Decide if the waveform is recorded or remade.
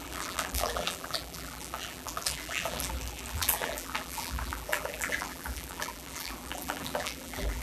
remade